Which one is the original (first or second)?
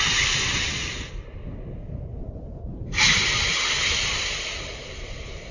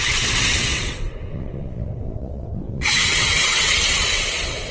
first